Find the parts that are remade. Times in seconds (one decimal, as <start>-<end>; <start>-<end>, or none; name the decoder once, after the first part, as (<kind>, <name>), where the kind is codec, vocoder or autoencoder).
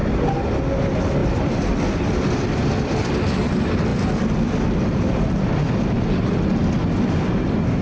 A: 0.0-0.6 (vocoder, BigVGAN v2); 1.2-3.1